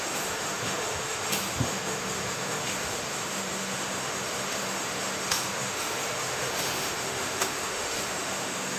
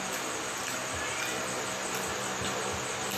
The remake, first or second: first